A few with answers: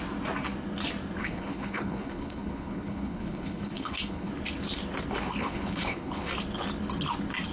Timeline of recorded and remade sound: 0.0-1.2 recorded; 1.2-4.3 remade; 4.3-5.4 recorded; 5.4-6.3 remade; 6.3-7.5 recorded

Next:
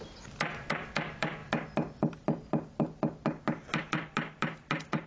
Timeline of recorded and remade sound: 0.0-5.1 recorded

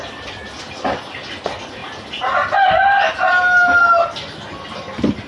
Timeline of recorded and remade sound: 0.0-5.3 recorded

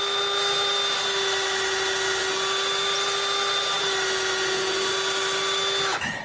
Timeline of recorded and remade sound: 0.0-6.2 recorded

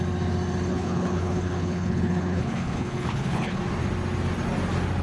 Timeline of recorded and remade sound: 0.0-0.7 recorded; 0.7-3.6 remade; 3.6-5.0 recorded

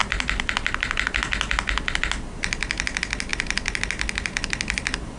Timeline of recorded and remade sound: 0.0-5.2 recorded

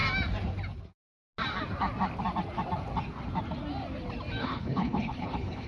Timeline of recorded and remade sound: 0.0-4.4 recorded; 4.4-5.7 remade